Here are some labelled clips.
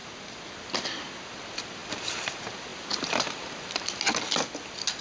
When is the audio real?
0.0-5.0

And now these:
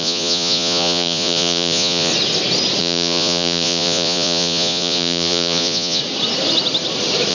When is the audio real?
2.1-2.8; 6.0-7.3

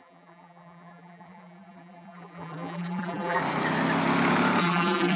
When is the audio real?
3.4-4.6

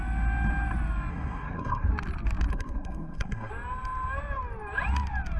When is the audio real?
0.0-1.1; 1.9-2.5; 3.5-5.4

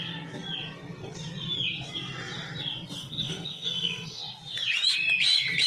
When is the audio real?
0.0-3.0; 4.2-5.7